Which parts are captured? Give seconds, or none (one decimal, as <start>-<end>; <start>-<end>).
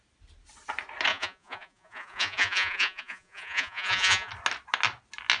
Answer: 0.0-1.1; 4.3-5.4